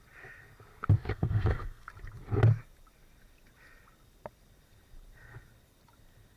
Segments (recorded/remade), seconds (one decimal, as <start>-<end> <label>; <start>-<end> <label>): 0.0-1.1 recorded; 1.1-1.9 remade; 1.9-6.4 recorded